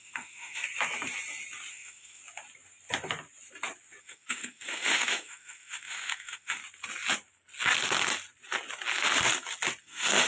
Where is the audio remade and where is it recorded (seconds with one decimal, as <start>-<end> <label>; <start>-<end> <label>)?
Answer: 0.0-0.6 remade; 0.6-1.7 recorded; 1.7-2.2 remade; 2.2-4.0 recorded; 4.0-6.6 remade; 6.6-9.8 recorded; 9.8-10.3 remade